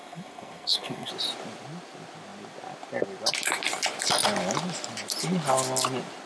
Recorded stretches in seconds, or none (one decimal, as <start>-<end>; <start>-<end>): 1.1-6.3

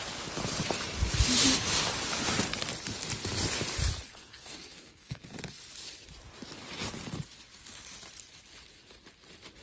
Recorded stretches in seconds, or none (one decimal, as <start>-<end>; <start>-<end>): 0.0-4.1; 5.2-9.6

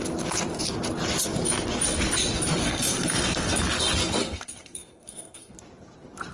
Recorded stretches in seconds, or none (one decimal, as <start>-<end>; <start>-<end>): 0.0-2.6; 3.6-4.2; 5.5-6.3

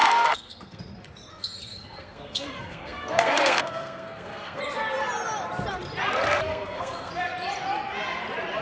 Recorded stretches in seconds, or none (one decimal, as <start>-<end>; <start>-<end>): 0.8-1.3; 4.6-6.5; 7.1-8.6

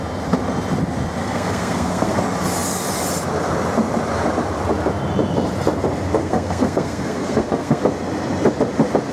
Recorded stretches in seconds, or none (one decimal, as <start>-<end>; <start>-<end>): 0.0-1.2; 2.2-6.2; 7.8-9.1

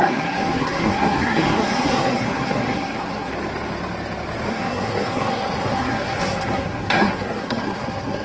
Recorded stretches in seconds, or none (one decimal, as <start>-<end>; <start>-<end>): 3.3-4.5

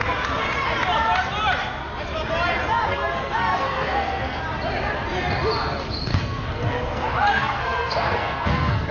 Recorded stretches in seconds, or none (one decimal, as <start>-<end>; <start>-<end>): 0.0-2.9; 4.4-6.1

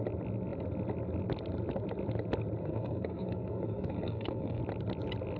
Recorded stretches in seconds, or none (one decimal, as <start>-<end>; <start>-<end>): 0.0-2.6; 4.6-5.4